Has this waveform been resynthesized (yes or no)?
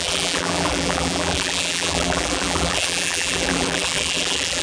yes